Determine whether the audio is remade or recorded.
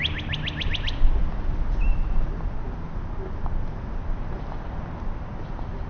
recorded